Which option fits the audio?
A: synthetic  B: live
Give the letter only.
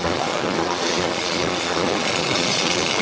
A